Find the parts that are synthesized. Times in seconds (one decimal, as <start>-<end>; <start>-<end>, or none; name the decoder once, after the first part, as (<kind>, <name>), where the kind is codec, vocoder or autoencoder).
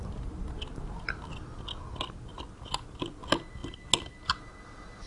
none